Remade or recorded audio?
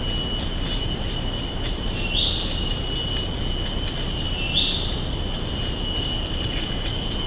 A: recorded